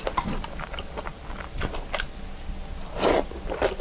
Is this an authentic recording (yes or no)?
yes